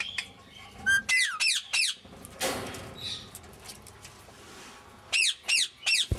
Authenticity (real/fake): real